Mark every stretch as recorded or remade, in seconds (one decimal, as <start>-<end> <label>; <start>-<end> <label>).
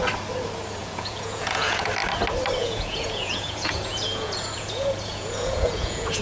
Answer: 0.0-0.8 recorded; 0.8-1.9 remade; 1.9-2.6 recorded; 2.6-6.2 remade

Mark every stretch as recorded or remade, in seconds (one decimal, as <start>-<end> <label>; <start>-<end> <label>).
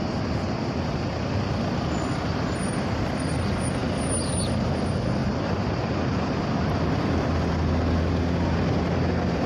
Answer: 0.0-9.5 recorded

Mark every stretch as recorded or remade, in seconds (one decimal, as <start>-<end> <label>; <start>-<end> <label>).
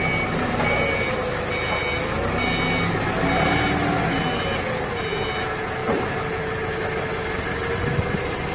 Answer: 0.0-8.5 recorded